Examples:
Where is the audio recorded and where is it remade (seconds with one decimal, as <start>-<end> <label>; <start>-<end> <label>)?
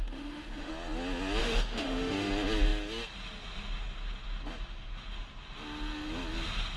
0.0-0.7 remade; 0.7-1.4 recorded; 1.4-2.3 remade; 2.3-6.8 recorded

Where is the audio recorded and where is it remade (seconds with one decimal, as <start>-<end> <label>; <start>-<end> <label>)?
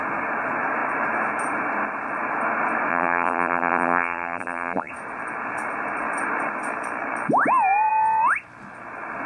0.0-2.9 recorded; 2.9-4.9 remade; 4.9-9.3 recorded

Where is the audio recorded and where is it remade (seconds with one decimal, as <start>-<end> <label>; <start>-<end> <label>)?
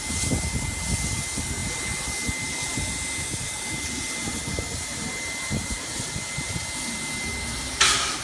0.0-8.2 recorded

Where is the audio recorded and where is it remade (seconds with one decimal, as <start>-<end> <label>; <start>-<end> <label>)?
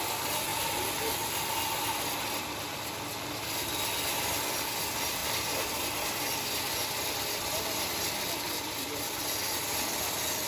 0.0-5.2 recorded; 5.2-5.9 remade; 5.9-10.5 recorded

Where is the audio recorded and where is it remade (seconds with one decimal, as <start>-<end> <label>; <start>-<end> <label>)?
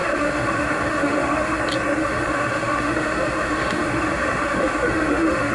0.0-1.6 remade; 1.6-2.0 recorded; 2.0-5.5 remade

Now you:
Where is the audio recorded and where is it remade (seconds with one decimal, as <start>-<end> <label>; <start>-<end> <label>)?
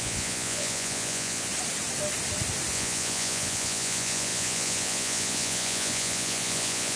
0.0-1.5 remade; 1.5-2.7 recorded; 2.7-7.0 remade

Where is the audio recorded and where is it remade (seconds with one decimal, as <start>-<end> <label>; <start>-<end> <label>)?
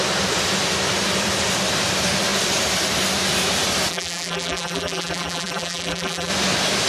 0.0-3.9 recorded; 3.9-6.3 remade; 6.3-6.9 recorded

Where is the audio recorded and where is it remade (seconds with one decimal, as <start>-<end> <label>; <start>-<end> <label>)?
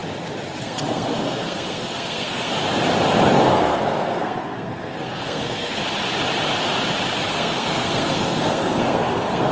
0.0-0.6 recorded; 0.6-2.5 remade; 2.5-3.4 recorded; 3.4-5.8 remade; 5.8-7.3 recorded; 7.3-9.5 remade